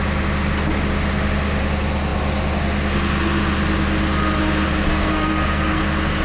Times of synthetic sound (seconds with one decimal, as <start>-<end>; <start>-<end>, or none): 4.9-5.8